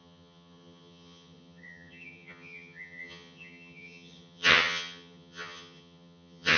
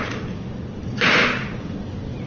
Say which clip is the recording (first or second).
second